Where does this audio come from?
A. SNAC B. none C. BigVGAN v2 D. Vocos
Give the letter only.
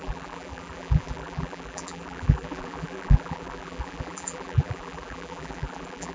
C